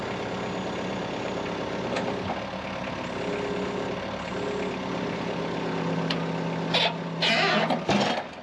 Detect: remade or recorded recorded